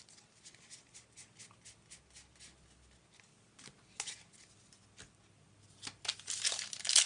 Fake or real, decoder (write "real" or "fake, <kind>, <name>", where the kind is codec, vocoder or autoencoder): real